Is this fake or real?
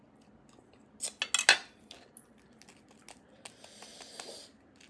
real